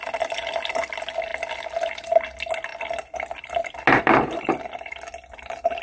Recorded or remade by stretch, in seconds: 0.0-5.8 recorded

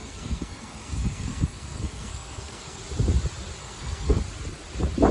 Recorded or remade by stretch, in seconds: 0.0-2.8 remade; 2.8-3.6 recorded; 3.6-4.2 remade; 4.2-5.1 recorded